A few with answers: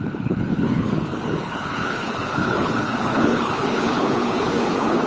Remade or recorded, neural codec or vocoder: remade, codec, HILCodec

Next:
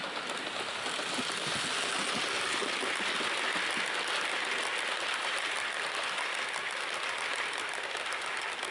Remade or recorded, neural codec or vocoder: recorded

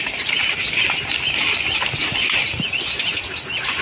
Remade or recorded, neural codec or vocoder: recorded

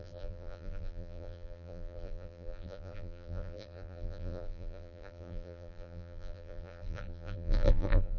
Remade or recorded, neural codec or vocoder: remade, vocoder, BigVGAN v2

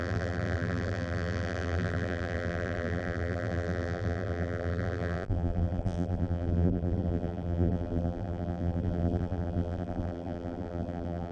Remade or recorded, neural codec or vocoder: remade, vocoder, BigVGAN v2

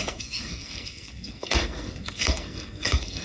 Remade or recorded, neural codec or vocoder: remade, codec, SNAC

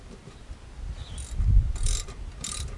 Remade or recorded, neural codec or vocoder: recorded